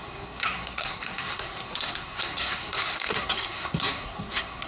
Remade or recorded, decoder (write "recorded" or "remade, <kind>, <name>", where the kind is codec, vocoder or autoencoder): remade, codec, SNAC